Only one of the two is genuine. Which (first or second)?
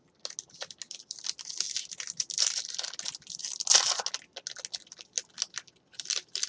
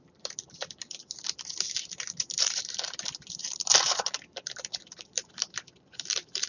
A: first